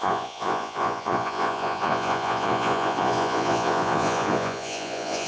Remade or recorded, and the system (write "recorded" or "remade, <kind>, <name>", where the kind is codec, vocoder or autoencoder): remade, vocoder, Vocos